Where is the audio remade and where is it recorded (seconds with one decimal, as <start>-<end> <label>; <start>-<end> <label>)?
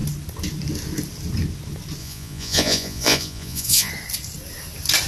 0.0-2.0 recorded; 2.0-3.9 remade; 3.9-5.1 recorded